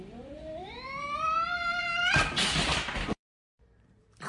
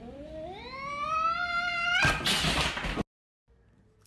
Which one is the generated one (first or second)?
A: first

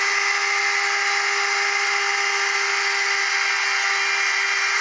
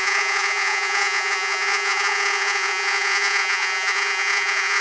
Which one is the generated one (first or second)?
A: second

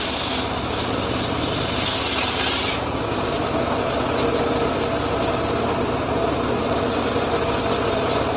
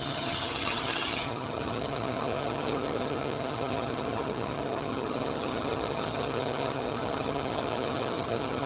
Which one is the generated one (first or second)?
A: second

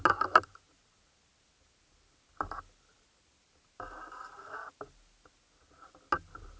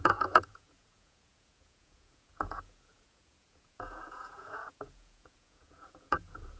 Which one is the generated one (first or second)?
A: second